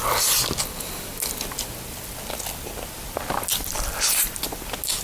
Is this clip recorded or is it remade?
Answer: recorded